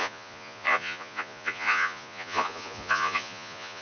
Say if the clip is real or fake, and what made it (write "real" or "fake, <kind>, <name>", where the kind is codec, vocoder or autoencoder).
fake, vocoder, Vocos